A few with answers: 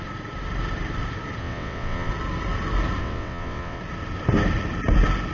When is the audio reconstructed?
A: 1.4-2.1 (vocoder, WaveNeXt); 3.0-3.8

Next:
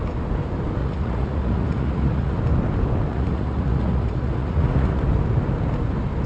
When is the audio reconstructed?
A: 0.8-2.4 (vocoder, Vocos); 3.1-5.0

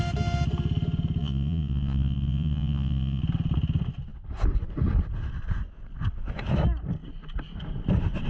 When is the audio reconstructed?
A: 1.2-3.2 (vocoder, Vocos)

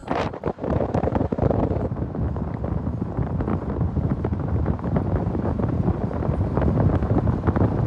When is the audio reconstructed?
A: 0.0-1.6 (vocoder, BigVGAN v2); 3.5-6.6